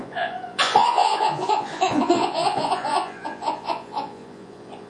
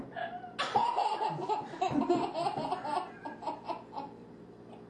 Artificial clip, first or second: first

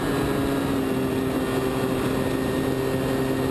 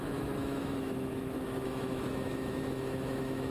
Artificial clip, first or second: second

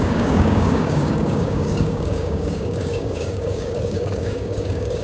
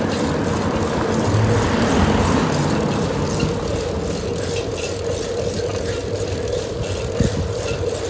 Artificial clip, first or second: first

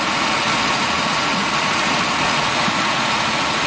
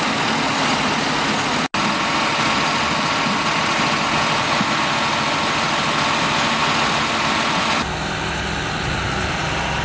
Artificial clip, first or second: first